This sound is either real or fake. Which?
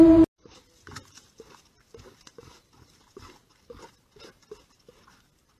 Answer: real